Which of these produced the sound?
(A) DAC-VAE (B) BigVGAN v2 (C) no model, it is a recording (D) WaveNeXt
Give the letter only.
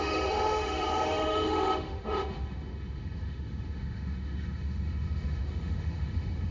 A